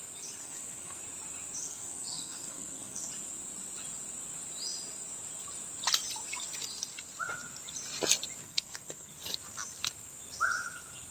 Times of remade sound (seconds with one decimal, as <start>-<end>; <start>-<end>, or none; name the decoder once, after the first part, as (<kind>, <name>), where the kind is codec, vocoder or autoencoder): 0.4-1.0 (codec, SNAC); 1.6-3.1; 8.4-9.1